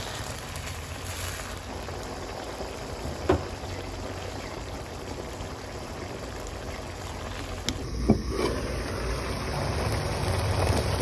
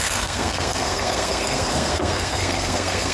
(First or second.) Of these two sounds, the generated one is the second